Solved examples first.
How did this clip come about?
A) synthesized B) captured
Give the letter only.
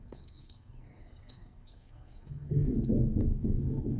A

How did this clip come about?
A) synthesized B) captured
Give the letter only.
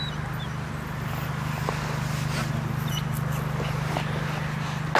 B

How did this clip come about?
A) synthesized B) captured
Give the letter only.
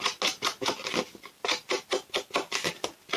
B